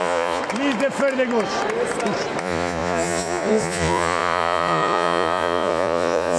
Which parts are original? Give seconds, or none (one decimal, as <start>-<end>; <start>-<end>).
0.4-2.4